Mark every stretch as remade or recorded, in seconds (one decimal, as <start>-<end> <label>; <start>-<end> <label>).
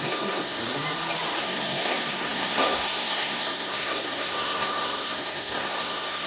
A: 0.0-0.6 remade; 0.6-1.4 recorded; 1.4-6.3 remade